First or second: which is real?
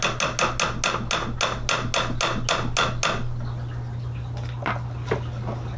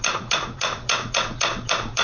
first